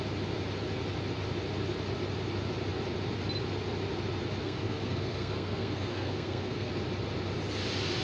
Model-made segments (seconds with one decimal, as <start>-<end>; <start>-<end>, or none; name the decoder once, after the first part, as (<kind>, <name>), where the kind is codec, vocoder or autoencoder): 4.4-6.7 (codec, SNAC)